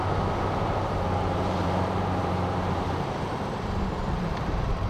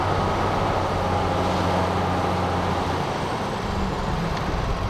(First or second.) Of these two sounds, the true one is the second